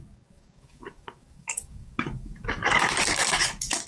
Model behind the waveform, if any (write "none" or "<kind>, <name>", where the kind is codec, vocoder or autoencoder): codec, DAC